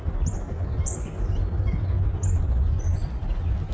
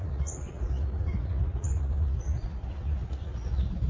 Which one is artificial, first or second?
second